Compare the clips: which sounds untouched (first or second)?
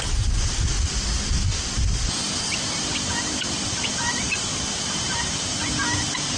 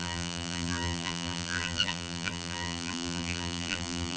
first